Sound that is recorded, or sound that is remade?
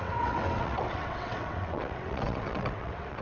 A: remade